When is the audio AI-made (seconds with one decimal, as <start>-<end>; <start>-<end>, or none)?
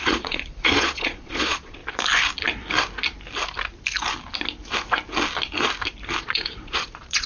0.0-1.8; 6.2-7.3